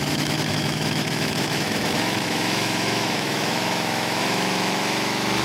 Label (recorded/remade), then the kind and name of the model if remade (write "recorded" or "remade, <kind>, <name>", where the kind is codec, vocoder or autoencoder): remade, autoencoder, DAC-VAE